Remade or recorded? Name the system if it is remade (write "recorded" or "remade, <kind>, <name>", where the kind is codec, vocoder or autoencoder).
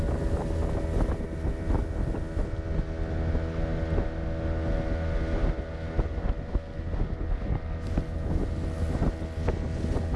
recorded